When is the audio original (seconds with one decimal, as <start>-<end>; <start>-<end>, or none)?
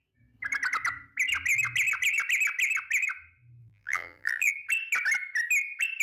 0.0-3.6; 4.5-6.0